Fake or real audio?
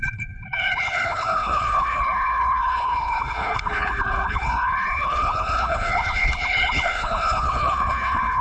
fake